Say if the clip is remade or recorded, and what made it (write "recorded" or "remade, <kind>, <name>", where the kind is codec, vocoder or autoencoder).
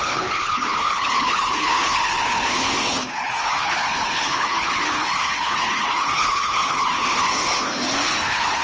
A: remade, codec, HILCodec